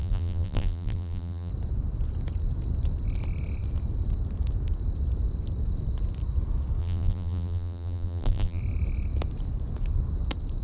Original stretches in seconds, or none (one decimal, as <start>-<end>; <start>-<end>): 1.5-6.8; 8.6-10.6